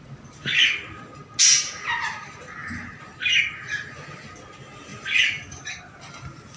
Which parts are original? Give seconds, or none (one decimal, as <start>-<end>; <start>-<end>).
0.0-6.6

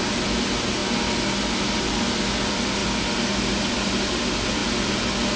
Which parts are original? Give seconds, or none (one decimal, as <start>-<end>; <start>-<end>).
0.0-5.4

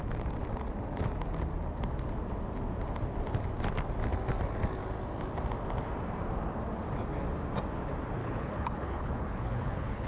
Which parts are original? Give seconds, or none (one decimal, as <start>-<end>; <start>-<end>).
0.0-8.2

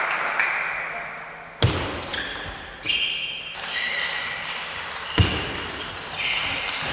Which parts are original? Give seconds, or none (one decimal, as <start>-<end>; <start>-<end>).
0.0-6.9

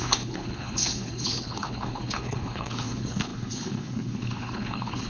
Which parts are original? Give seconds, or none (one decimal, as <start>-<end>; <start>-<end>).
none